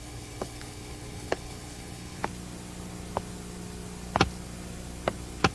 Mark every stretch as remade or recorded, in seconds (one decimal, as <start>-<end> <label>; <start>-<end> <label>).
0.0-2.2 remade; 2.2-5.5 recorded